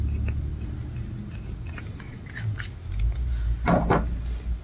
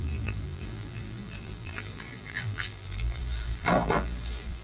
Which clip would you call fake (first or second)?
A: second